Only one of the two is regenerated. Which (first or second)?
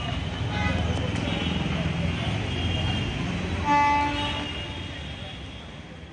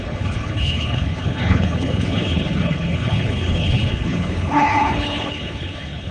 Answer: second